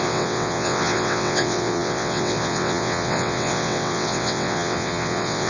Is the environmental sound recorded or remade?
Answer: remade